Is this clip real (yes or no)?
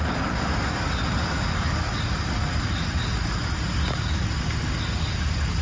yes